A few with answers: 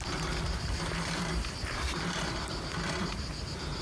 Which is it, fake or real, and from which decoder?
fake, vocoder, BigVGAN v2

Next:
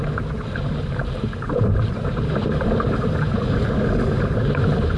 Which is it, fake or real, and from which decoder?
fake, vocoder, BigVGAN v2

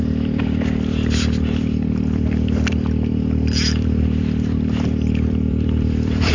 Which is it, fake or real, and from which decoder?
fake, vocoder, BigVGAN v2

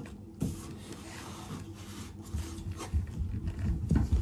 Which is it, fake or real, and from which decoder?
real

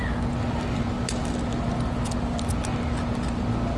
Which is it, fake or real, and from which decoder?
real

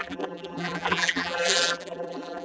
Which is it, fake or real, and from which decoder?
fake, vocoder, BigVGAN v2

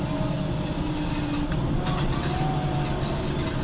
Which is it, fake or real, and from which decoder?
real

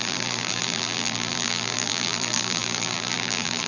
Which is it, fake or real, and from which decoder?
fake, vocoder, BigVGAN v2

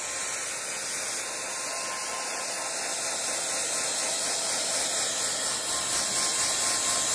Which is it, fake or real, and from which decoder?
real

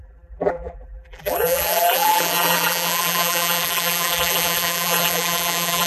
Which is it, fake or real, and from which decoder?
fake, vocoder, BigVGAN v2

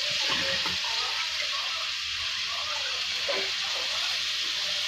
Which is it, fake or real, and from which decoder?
real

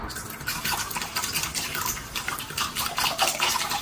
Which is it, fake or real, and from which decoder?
real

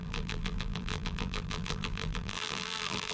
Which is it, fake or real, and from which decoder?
fake, vocoder, BigVGAN v2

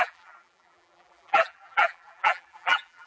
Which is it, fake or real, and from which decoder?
fake, vocoder, BigVGAN v2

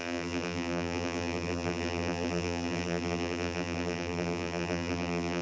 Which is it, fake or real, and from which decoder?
fake, vocoder, BigVGAN v2